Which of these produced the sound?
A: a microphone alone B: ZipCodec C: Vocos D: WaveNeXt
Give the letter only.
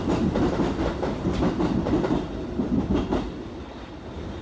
A